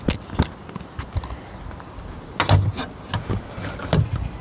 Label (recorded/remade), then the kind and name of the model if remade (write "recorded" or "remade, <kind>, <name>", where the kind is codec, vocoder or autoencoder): recorded